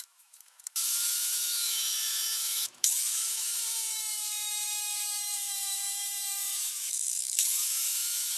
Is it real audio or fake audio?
fake